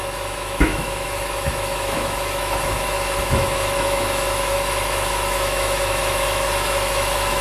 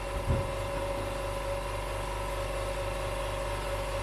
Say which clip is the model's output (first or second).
first